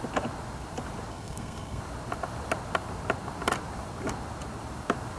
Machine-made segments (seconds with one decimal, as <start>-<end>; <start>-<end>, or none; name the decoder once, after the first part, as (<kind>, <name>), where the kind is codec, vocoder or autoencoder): 1.1-1.8 (codec, SNAC)